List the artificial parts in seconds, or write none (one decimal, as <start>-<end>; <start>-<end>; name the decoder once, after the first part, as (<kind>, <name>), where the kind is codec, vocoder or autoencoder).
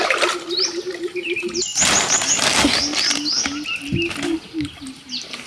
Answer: none